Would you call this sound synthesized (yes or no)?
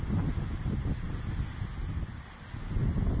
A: no